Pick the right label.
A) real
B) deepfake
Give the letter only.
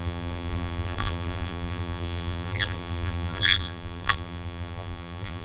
B